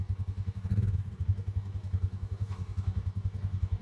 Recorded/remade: remade